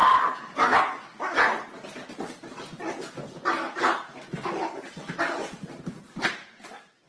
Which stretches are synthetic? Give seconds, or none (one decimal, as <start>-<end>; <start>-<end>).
none